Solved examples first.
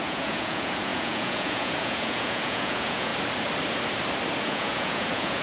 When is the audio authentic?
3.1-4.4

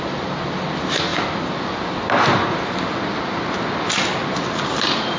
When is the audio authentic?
0.0-5.2

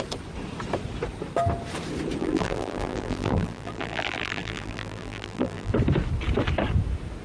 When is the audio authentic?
0.0-2.2; 5.7-7.2

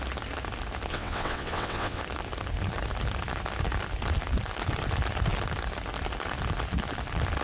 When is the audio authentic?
0.0-0.9; 2.0-7.4

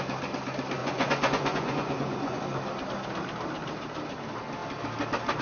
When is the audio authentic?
0.0-0.8; 2.4-5.4